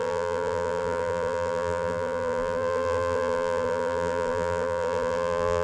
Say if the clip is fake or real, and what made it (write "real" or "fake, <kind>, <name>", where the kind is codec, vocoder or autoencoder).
fake, vocoder, BigVGAN v2